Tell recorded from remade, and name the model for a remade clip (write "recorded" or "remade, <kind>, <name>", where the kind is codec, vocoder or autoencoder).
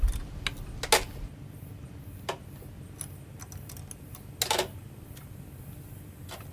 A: recorded